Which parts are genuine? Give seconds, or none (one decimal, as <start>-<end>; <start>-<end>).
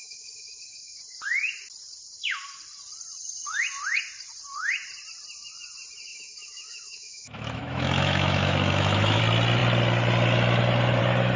1.0-6.1; 9.2-11.4